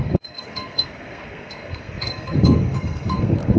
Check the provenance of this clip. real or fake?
fake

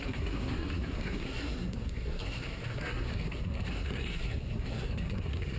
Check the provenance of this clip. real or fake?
fake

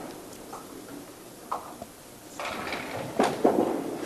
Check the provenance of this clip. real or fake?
real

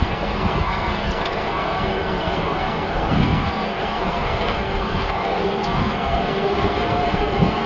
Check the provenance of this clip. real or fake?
fake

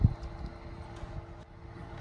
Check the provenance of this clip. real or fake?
real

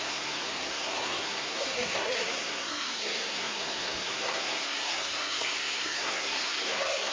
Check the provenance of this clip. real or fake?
fake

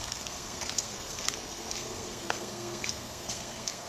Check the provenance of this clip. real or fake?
fake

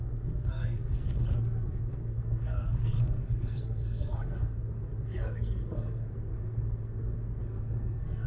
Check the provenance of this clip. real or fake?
fake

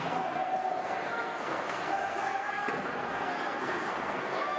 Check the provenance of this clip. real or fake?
fake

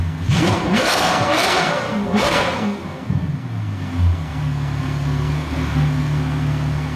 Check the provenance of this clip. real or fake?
fake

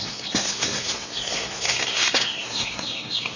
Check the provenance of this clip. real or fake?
fake